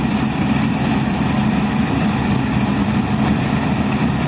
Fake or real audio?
real